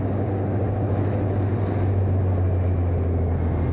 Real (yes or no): yes